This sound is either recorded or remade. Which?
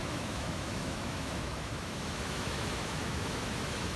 remade